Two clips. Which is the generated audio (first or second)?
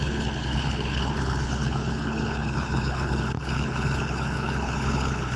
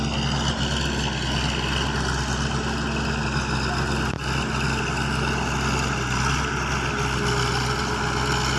first